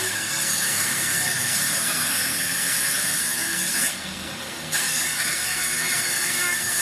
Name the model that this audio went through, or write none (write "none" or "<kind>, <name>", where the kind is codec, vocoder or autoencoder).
codec, SNAC